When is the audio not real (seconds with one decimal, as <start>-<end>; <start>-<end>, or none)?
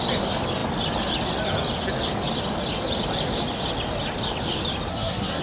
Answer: 4.9-5.4